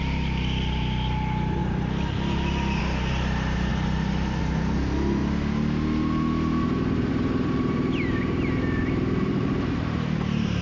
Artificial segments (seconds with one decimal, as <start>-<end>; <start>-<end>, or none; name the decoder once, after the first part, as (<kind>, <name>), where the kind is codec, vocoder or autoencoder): 0.0-1.6 (vocoder, BigVGAN v2); 2.8-3.7; 4.4-5.2; 7.1-10.6